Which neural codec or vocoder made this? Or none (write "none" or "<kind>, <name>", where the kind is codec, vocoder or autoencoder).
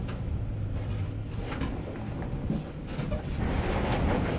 none